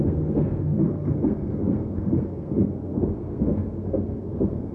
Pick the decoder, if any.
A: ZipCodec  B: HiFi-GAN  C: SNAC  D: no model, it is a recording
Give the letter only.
C